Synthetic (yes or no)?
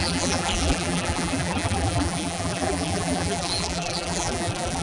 yes